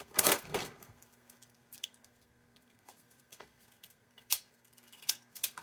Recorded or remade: remade